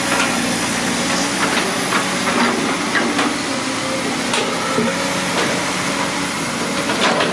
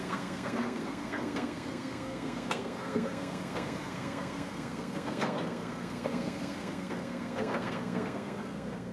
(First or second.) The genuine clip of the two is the first